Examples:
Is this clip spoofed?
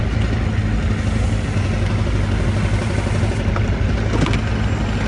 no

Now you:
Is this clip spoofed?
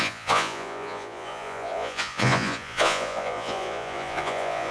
yes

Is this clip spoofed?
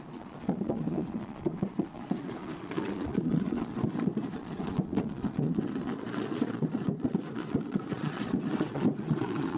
yes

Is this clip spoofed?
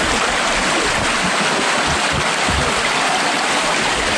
no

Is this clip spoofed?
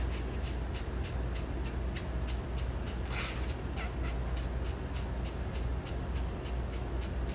no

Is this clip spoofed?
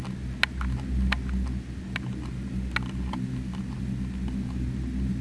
no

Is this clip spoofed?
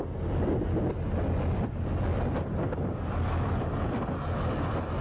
no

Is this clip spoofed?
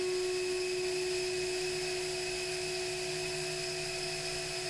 no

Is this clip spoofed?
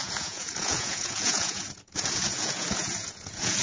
yes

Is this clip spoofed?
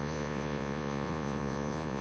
yes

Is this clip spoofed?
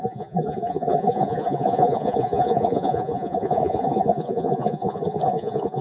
yes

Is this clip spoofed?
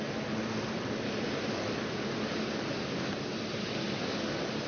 no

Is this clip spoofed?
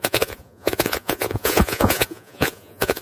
yes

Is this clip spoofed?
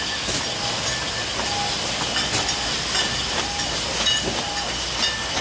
no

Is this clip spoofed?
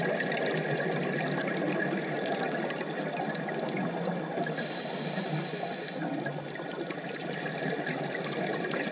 no